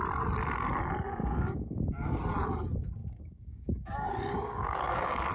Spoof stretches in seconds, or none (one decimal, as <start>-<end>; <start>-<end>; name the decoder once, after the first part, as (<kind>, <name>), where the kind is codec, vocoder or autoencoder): 1.2-2.2 (codec, DAC); 3.0-5.3